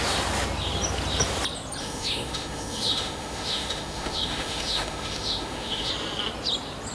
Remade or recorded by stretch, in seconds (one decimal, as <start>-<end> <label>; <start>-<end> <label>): 0.0-1.8 recorded; 1.8-5.9 remade; 5.9-6.9 recorded